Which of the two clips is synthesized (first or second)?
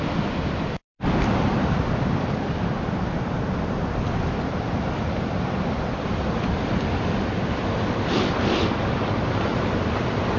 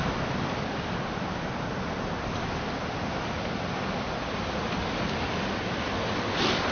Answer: first